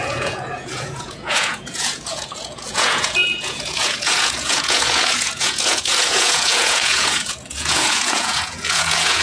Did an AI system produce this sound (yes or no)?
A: yes